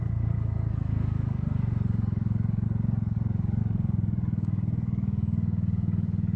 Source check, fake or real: fake